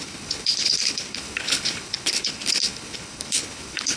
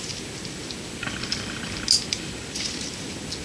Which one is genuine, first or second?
second